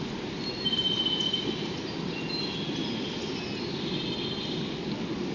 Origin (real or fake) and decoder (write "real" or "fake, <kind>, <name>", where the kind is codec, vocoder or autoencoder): real